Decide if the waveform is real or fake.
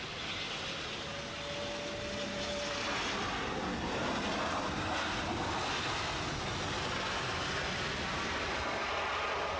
real